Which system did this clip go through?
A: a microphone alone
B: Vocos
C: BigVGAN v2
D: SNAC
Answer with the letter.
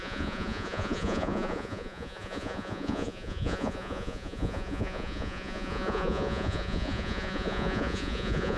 B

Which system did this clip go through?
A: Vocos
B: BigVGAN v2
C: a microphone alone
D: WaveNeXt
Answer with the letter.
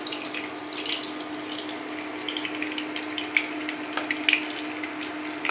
C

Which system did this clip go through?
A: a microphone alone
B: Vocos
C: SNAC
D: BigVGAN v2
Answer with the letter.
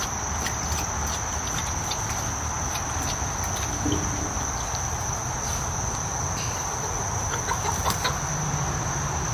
A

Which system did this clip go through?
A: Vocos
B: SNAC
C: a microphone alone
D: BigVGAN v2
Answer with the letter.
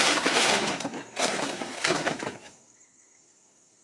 B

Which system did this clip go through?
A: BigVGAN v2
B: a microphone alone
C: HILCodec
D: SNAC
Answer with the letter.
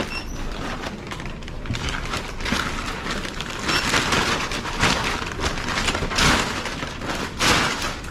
A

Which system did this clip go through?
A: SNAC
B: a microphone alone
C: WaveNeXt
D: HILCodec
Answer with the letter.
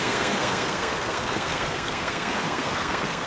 A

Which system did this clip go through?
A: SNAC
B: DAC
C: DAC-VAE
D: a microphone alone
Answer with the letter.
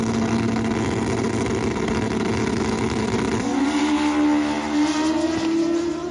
D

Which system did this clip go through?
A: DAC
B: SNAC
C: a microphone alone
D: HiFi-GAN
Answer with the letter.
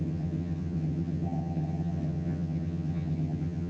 D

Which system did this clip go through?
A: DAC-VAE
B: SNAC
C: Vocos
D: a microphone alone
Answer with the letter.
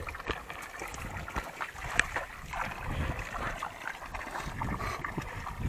D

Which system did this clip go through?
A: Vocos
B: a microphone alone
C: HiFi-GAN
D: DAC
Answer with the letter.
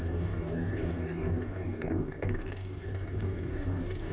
D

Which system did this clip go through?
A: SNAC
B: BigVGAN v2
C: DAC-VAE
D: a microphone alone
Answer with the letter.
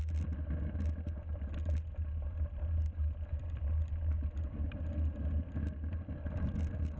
D